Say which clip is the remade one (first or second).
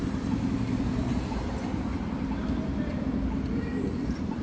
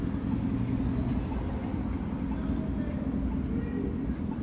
first